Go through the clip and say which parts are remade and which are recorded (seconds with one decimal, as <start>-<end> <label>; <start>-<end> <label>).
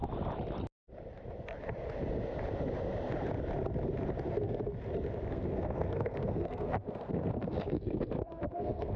0.0-4.3 recorded; 4.3-4.7 remade; 4.7-5.3 recorded; 5.3-9.0 remade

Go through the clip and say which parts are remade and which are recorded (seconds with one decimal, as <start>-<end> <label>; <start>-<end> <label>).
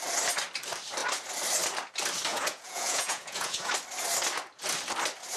0.0-2.3 recorded; 2.3-3.7 remade; 3.7-5.4 recorded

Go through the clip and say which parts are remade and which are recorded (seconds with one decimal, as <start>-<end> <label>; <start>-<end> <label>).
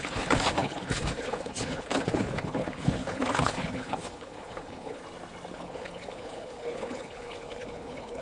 0.0-5.0 remade; 5.0-5.5 recorded; 5.5-8.2 remade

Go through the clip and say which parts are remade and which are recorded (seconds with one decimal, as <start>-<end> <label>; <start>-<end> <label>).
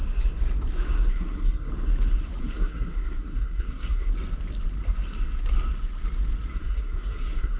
0.0-1.1 recorded; 1.1-1.7 remade; 1.7-2.4 recorded; 2.4-4.1 remade; 4.1-6.5 recorded; 6.5-7.6 remade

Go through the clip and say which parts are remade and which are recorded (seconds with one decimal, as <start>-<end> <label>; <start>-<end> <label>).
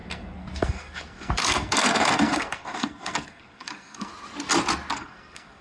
0.0-4.1 remade; 4.1-4.9 recorded; 4.9-5.6 remade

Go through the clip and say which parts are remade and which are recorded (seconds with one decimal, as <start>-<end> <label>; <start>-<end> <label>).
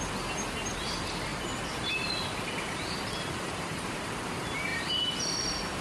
0.0-5.8 recorded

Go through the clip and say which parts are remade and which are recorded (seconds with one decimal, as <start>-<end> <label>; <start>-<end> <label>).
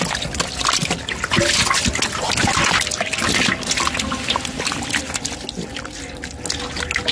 0.0-7.1 recorded